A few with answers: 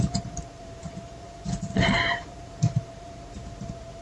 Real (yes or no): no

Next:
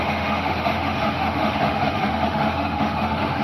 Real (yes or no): no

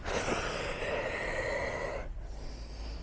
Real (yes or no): yes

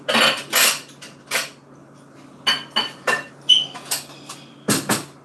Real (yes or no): yes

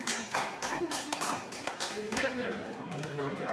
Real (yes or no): no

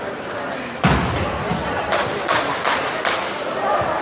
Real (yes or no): yes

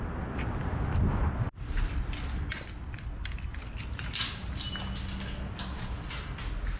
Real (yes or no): yes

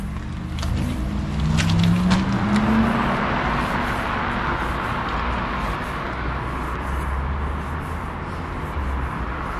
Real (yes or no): yes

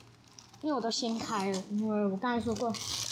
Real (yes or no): yes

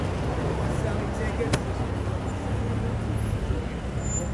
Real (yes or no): yes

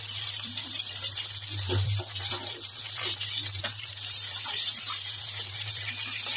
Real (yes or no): no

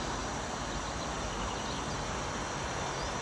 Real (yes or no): yes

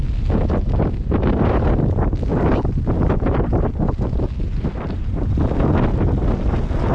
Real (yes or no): yes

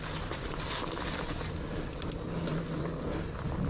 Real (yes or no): yes